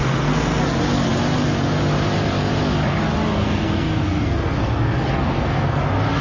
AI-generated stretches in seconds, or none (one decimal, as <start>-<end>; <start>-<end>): 0.0-0.6; 3.3-5.8